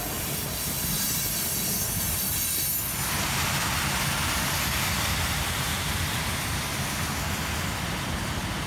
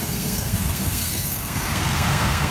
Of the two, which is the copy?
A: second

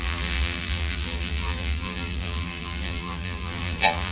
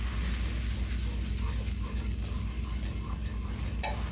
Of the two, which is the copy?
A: first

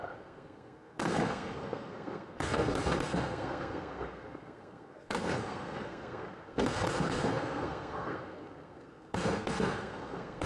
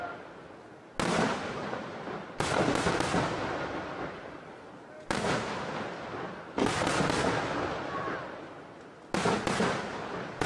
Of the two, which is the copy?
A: first